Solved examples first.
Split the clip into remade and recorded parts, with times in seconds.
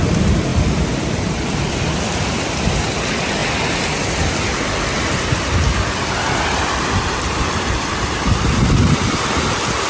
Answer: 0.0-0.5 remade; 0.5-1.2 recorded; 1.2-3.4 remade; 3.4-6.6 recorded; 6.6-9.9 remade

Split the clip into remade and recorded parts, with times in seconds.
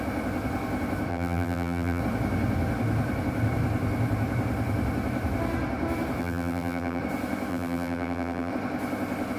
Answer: 0.0-1.1 recorded; 1.1-2.0 remade; 2.0-6.2 recorded; 6.2-7.0 remade; 7.0-7.5 recorded; 7.5-8.5 remade; 8.5-9.4 recorded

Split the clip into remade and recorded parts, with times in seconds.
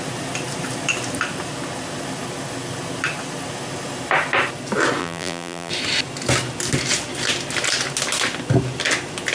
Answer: 0.0-5.0 recorded; 5.0-5.7 remade; 5.7-9.3 recorded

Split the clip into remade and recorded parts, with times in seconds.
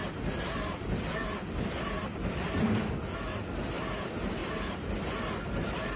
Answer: 0.0-4.4 recorded; 4.4-4.9 remade; 4.9-6.0 recorded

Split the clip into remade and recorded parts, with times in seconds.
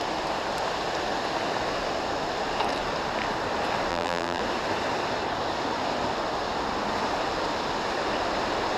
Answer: 0.0-3.9 recorded; 3.9-4.4 remade; 4.4-8.8 recorded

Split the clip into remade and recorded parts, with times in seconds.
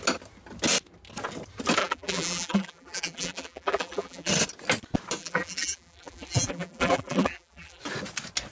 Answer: 0.0-1.8 recorded; 1.8-4.3 remade; 4.3-5.2 recorded; 5.2-7.8 remade; 7.8-8.5 recorded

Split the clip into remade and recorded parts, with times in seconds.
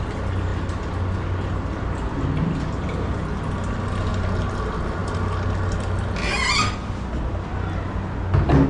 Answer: 0.0-8.7 recorded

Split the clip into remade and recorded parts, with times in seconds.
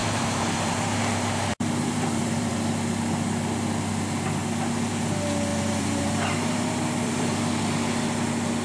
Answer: 0.0-2.5 remade; 2.5-5.5 recorded; 5.5-7.5 remade; 7.5-8.6 recorded